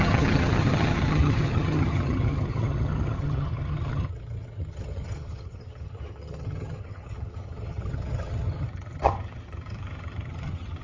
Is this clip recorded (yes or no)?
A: no